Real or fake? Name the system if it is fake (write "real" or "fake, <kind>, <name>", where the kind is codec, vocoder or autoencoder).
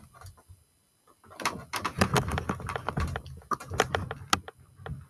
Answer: real